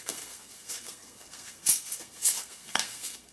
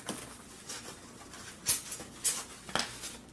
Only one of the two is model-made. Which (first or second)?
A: first